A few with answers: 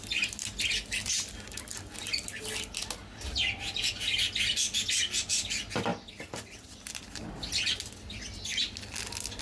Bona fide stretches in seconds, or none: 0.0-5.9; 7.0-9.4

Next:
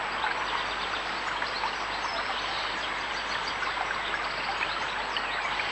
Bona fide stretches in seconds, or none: 0.0-5.7

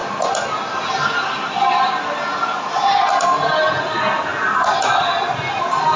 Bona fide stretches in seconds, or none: 0.0-6.0

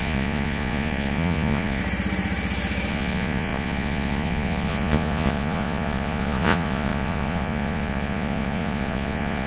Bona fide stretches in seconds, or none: 1.8-2.9

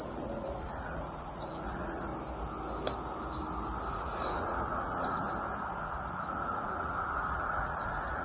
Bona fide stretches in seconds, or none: 2.1-3.9; 5.2-5.7

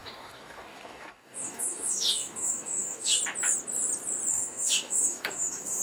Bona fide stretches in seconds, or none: 3.2-4.3

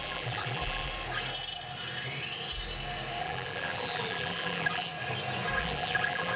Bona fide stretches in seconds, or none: 0.9-3.2; 4.9-5.6

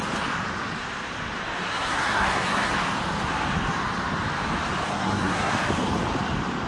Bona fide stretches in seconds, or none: 0.0-1.6; 2.7-4.9; 5.5-6.7